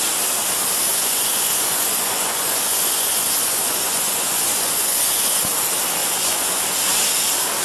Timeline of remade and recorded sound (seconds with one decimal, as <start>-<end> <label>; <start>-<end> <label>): 0.0-0.9 recorded; 0.9-5.4 remade; 5.4-6.0 recorded; 6.0-6.6 remade; 6.6-7.6 recorded